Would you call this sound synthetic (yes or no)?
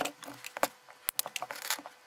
no